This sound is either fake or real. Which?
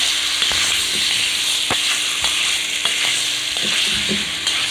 real